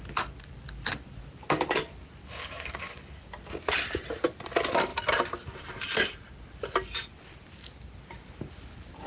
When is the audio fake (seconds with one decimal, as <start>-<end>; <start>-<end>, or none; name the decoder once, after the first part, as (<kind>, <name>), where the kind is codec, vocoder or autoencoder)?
2.2-3.3 (codec, DAC)